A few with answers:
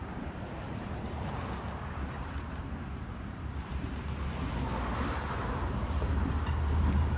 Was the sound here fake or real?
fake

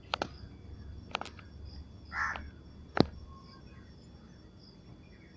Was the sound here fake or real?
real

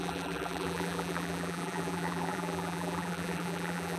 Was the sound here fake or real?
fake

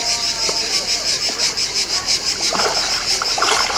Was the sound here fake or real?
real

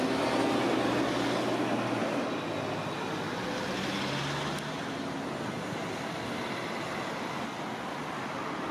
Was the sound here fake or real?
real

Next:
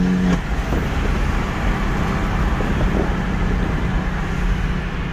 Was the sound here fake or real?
real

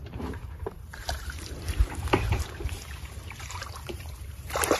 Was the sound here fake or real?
fake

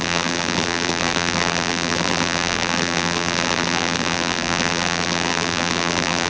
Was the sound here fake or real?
fake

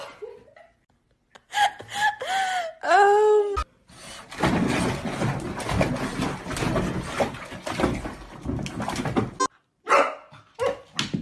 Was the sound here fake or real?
real